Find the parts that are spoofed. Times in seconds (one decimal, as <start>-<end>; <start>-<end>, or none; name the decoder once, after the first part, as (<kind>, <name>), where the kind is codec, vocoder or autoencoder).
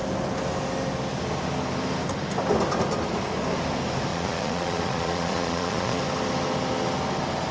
4.1-6.0 (vocoder, Vocos)